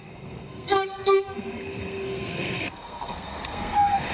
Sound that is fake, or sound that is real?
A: fake